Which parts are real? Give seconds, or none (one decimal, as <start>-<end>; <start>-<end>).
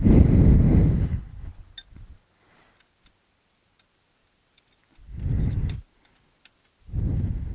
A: 0.0-7.5